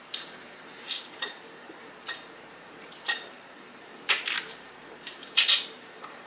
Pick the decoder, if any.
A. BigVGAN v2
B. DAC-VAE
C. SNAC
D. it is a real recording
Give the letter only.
A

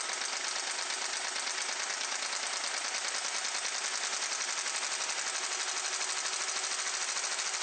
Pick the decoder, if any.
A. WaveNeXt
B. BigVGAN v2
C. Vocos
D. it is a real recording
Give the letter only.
D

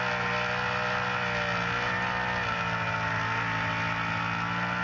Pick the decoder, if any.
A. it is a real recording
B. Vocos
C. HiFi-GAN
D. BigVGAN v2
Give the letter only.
A